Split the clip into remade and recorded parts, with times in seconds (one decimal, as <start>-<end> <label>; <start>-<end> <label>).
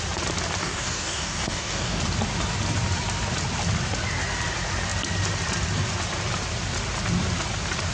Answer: 0.0-0.6 recorded; 0.6-2.0 remade; 2.0-7.9 recorded